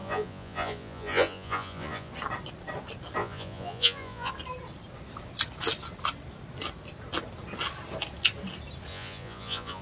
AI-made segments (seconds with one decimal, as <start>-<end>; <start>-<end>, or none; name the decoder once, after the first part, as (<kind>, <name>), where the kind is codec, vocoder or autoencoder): 0.0-2.1 (vocoder, Vocos); 3.2-4.3; 8.9-9.8